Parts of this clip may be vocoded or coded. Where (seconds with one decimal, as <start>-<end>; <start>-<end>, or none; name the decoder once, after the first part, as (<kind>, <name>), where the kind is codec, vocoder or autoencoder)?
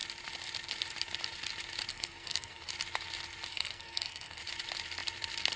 1.9-2.7 (codec, SNAC); 3.5-4.4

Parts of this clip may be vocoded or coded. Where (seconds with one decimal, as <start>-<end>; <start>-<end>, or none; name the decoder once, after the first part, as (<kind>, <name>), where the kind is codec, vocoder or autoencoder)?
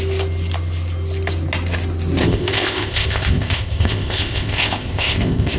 2.2-5.6 (codec, ZipCodec)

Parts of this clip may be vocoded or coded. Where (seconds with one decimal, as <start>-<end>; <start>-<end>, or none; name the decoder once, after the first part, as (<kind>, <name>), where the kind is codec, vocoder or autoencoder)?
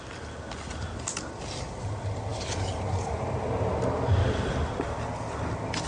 none